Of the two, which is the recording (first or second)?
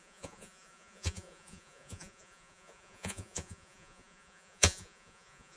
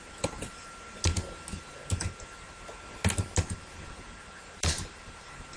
second